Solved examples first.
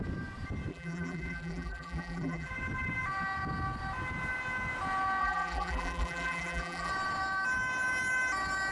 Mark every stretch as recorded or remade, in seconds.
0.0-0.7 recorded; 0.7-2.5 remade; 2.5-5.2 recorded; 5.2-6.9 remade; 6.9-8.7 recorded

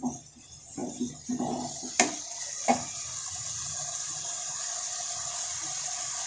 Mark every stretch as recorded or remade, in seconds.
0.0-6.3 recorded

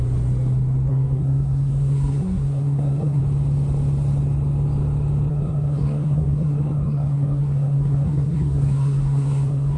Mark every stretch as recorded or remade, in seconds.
0.0-0.9 recorded; 0.9-3.2 remade; 3.2-5.3 recorded; 5.3-9.8 remade

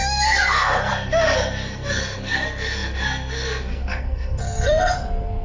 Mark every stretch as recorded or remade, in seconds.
0.0-5.4 remade